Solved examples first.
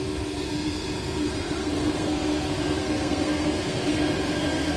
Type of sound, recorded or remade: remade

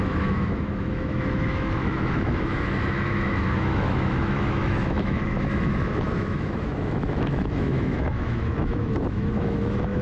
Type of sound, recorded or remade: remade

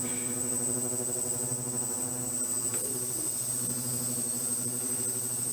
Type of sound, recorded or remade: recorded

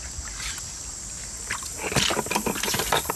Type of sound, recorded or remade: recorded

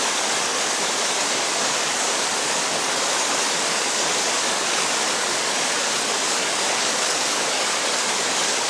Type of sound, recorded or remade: remade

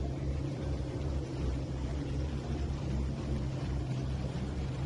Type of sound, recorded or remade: remade